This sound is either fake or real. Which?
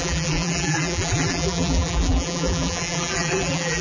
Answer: fake